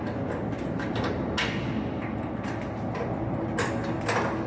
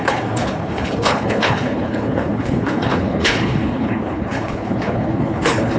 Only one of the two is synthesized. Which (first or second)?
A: second